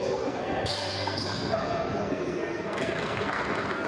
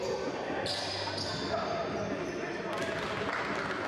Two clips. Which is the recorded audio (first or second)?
second